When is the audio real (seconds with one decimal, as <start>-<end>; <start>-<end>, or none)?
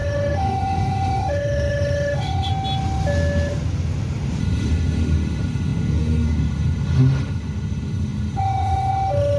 2.5-4.4